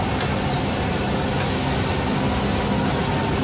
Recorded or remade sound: recorded